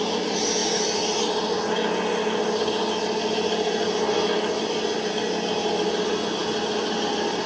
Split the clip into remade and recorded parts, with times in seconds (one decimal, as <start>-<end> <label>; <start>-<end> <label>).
0.0-7.5 recorded